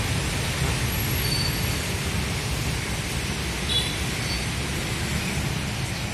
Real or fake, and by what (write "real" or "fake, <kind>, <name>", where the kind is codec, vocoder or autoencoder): real